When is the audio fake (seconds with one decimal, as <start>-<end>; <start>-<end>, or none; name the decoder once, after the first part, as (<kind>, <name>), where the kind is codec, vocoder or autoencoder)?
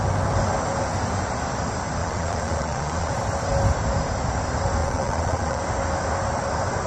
2.0-3.1 (vocoder, Vocos); 4.8-5.6